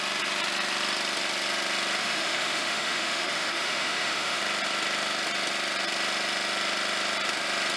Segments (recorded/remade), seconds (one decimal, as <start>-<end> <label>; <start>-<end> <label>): 0.0-2.0 recorded; 2.0-4.4 remade; 4.4-7.8 recorded